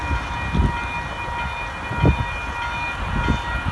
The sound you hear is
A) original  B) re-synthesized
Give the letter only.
A